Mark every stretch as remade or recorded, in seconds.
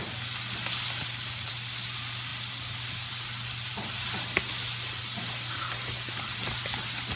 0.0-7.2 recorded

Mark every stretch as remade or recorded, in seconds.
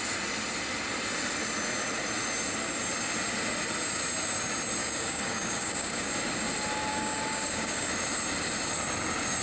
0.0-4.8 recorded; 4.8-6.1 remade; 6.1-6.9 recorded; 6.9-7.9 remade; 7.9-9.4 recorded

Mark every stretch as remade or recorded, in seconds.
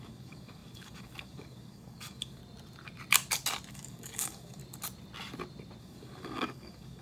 0.0-2.4 remade; 2.4-3.7 recorded; 3.7-4.6 remade; 4.6-5.8 recorded; 5.8-7.0 remade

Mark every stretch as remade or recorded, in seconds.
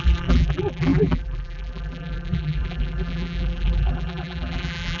0.0-5.0 remade